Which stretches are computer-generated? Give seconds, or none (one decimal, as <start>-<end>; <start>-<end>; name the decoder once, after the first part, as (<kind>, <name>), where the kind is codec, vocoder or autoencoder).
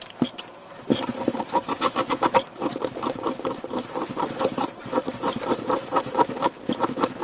0.0-7.2 (vocoder, BigVGAN v2)